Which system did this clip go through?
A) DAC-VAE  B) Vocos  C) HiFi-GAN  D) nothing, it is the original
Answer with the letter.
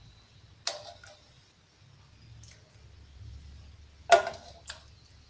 D